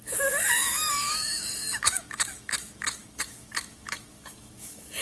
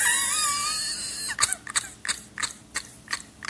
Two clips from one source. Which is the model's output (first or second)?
first